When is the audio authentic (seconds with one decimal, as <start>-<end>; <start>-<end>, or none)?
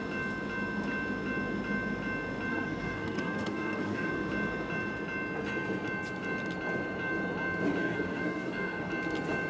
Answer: 0.0-2.5; 4.1-7.8; 8.9-9.5